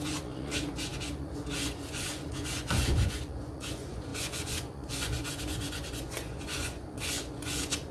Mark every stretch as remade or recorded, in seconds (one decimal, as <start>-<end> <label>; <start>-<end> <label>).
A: 0.0-7.9 remade